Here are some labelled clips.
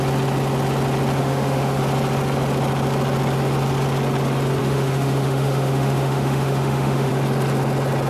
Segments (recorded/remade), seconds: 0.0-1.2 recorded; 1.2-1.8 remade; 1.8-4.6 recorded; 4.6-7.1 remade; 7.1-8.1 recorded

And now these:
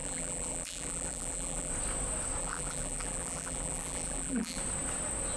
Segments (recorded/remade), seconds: 0.0-1.7 remade; 1.7-2.4 recorded; 2.4-4.6 remade; 4.6-5.4 recorded

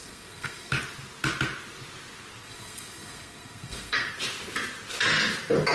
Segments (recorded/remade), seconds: 0.0-0.7 remade; 0.7-2.4 recorded; 2.4-4.1 remade; 4.1-5.7 recorded